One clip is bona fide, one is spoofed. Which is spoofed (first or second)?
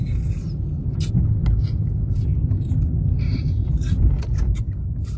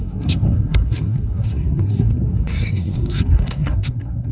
second